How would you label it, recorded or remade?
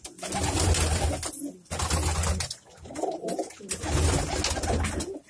recorded